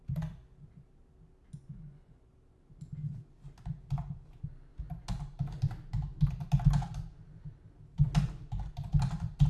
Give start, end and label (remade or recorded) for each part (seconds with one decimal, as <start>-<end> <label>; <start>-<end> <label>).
0.0-1.6 recorded; 1.6-2.3 remade; 2.3-9.5 recorded